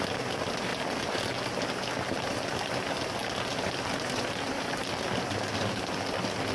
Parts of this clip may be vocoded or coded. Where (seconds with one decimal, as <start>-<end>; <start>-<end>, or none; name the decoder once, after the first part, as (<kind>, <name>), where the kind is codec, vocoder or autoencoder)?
0.7-1.2 (vocoder, BigVGAN v2); 3.2-3.8